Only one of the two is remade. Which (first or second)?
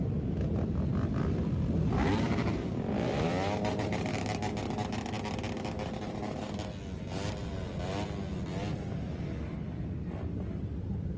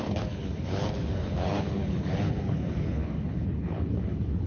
second